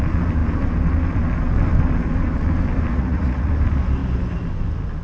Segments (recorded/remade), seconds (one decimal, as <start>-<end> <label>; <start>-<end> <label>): 0.0-2.9 recorded; 2.9-3.5 remade; 3.5-5.0 recorded